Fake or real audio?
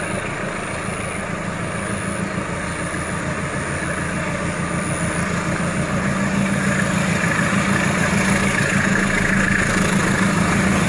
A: real